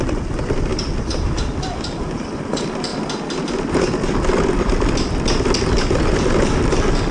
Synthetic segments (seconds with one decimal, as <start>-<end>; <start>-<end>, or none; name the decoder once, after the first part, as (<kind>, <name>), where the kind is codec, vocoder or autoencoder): 0.0-0.7 (vocoder, BigVGAN v2); 2.0-7.1